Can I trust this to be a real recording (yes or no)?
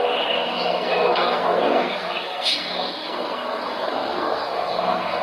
no